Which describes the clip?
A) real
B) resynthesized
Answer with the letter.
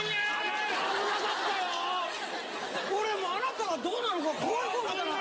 A